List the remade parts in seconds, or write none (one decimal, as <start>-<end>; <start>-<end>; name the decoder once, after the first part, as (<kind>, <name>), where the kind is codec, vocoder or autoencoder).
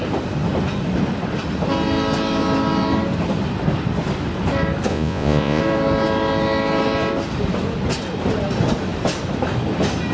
4.9-5.6 (vocoder, Vocos)